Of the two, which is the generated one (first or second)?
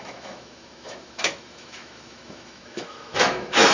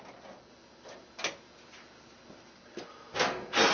first